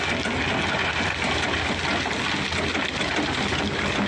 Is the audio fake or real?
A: real